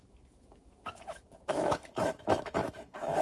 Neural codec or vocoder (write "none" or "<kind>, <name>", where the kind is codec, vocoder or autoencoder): autoencoder, DAC-VAE